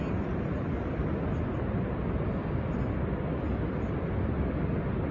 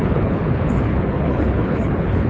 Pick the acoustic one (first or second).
first